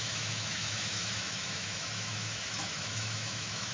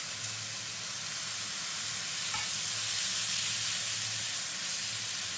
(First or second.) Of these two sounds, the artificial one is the first